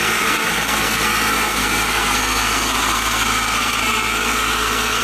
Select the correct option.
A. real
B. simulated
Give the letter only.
B